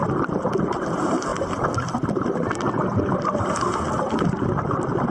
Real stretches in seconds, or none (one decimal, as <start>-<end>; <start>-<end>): 0.0-5.1